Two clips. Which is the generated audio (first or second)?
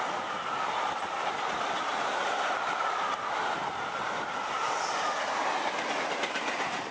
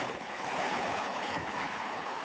second